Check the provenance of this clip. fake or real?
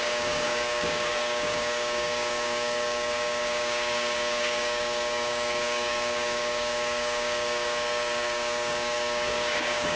fake